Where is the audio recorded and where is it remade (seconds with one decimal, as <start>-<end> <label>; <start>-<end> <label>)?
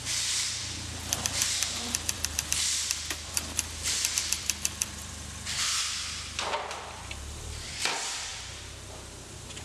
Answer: 0.0-9.6 remade